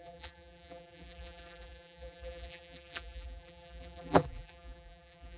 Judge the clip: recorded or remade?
remade